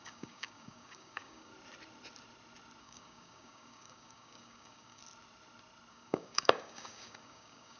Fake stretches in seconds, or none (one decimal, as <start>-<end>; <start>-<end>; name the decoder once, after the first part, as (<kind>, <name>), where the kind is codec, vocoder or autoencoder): 0.0-1.5 (codec, DAC); 2.8-5.0; 5.9-7.8